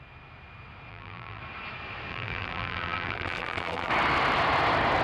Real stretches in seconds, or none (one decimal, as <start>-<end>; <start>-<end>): 0.0-0.9; 1.4-2.1; 3.9-5.0